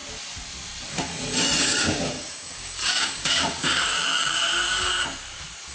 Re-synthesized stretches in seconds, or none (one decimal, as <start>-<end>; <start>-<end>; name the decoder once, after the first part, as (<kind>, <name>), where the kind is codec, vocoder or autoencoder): 1.6-4.9 (codec, DAC)

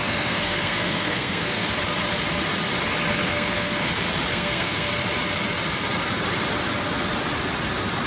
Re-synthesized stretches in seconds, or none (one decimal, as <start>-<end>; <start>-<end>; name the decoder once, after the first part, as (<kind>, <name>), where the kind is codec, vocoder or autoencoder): 0.0-1.7 (codec, SNAC); 3.2-3.9; 4.3-4.9

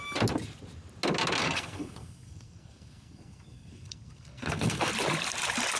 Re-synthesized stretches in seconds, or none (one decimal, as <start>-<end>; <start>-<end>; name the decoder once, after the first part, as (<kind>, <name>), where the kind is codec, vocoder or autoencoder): 1.4-4.9 (codec, SNAC)

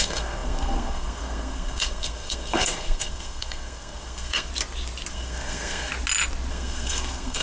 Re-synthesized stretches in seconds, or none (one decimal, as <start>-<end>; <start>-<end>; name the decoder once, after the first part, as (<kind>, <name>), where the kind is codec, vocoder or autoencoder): 0.0-4.5 (codec, SNAC); 5.1-5.9; 6.5-7.4